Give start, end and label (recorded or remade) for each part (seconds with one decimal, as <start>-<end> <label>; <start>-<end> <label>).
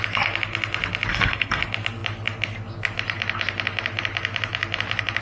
0.0-1.1 recorded; 1.1-1.6 remade; 1.6-5.2 recorded